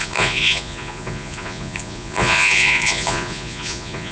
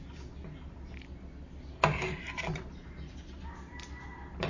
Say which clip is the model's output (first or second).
first